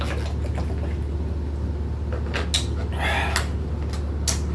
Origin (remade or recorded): recorded